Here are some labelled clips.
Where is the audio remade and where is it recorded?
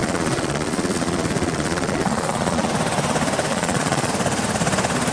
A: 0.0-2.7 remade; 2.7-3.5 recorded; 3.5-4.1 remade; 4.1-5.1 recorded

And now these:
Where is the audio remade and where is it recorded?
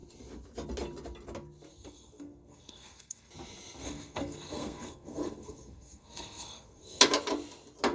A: 0.0-1.7 recorded; 1.7-3.3 remade; 3.3-3.8 recorded; 3.8-7.0 remade; 7.0-7.9 recorded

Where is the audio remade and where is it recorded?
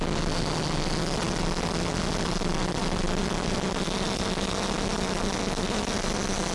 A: 0.0-6.5 recorded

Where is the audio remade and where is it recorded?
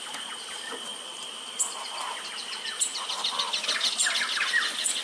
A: 0.0-5.0 recorded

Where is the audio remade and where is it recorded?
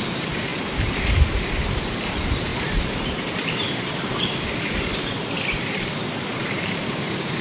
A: 0.0-2.5 remade; 2.5-3.1 recorded; 3.1-4.9 remade; 4.9-6.2 recorded; 6.2-7.4 remade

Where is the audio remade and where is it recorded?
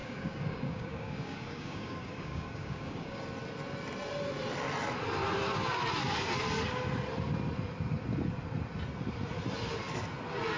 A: 0.0-3.2 remade; 3.2-10.6 recorded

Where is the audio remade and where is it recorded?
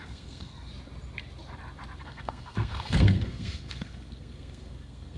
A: 0.0-0.7 remade; 0.7-2.0 recorded; 2.0-5.2 remade